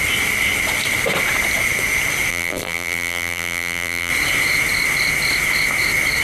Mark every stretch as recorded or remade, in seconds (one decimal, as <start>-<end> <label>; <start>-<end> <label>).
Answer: 0.0-2.3 recorded; 2.3-4.1 remade; 4.1-6.2 recorded